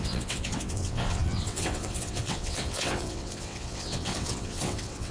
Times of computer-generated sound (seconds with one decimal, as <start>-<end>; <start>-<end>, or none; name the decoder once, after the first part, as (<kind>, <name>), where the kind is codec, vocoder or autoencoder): 0.0-5.1 (vocoder, WaveNeXt)